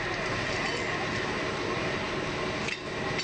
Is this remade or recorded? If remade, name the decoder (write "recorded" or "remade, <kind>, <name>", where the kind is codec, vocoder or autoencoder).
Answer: recorded